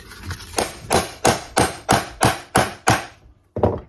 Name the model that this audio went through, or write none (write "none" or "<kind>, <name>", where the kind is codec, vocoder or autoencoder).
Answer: none